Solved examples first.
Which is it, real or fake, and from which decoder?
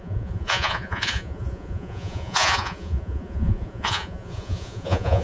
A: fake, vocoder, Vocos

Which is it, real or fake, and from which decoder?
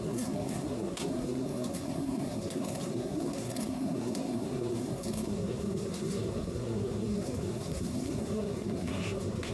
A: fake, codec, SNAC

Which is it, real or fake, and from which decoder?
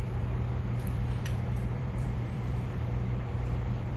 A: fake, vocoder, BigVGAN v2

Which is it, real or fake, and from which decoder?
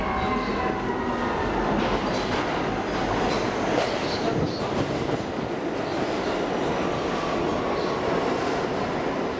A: real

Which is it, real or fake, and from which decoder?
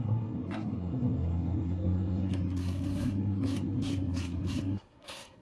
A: fake, codec, SNAC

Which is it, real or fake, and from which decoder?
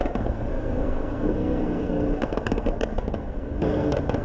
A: fake, codec, SNAC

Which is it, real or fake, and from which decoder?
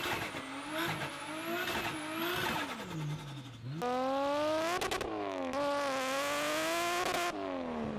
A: real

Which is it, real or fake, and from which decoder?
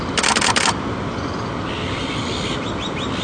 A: real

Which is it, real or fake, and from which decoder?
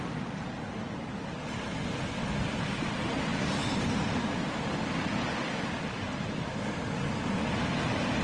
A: real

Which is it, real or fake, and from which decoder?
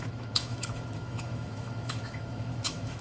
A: fake, autoencoder, DAC-VAE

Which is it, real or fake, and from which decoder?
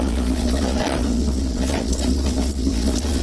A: fake, vocoder, Vocos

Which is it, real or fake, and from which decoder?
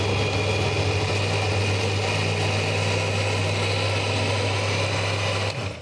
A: real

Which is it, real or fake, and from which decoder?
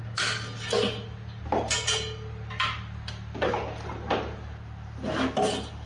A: real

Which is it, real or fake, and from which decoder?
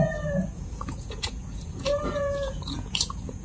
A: fake, vocoder, Vocos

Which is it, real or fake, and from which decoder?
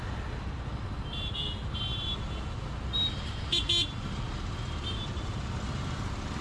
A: real